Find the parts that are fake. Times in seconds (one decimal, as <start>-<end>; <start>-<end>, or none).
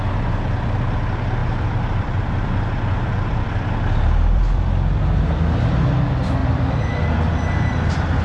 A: 1.4-5.2; 6.4-7.0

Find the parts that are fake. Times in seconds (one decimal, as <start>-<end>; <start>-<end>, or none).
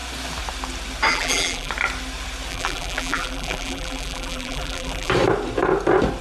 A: 1.1-1.7; 2.5-5.1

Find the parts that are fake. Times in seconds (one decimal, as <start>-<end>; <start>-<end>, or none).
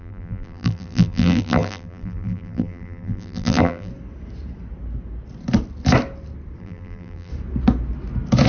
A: 0.0-3.9; 6.6-7.3